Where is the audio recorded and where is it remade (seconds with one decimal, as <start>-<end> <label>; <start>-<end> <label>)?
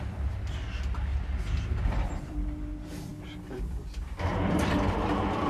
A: 0.0-1.1 remade; 1.1-2.1 recorded; 2.1-5.5 remade